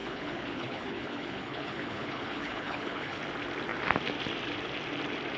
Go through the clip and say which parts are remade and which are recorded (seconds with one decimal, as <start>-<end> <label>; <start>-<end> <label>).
0.0-3.2 remade; 3.2-5.4 recorded